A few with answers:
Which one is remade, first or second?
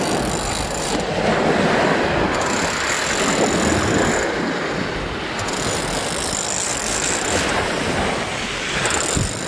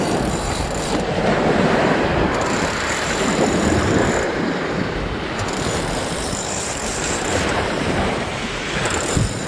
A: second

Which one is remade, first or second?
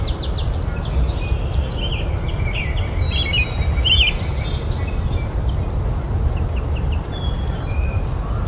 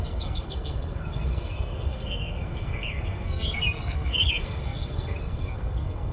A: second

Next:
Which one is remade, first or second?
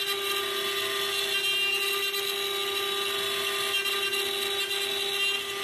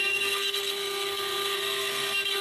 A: second